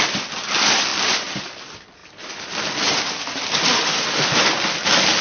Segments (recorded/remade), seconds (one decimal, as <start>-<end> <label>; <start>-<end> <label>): 0.0-0.9 recorded; 0.9-1.6 remade; 1.6-5.2 recorded